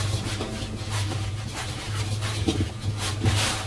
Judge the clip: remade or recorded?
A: remade